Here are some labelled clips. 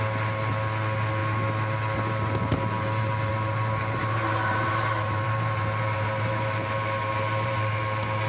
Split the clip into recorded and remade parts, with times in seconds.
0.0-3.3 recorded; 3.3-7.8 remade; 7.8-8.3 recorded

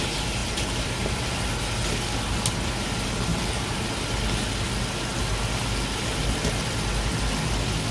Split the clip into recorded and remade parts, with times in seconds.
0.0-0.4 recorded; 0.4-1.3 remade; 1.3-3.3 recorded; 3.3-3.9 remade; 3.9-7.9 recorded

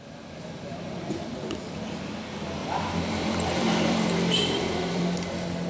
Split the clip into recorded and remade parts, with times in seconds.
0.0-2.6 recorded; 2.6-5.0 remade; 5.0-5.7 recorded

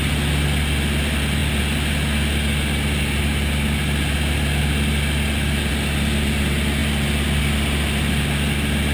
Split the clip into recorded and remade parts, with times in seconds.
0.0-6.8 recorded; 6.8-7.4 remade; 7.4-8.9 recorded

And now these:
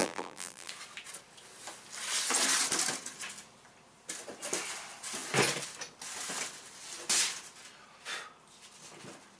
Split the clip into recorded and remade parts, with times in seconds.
0.0-0.7 remade; 0.7-9.4 recorded

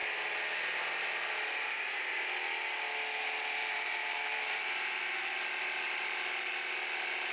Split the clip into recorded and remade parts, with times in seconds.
0.0-3.6 recorded; 3.6-5.2 remade; 5.2-7.3 recorded